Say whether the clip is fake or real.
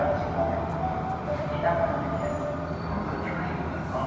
fake